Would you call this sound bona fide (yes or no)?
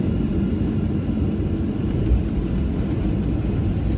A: yes